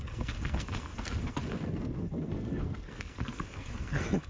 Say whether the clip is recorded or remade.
remade